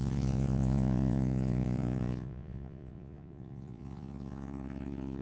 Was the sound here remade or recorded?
remade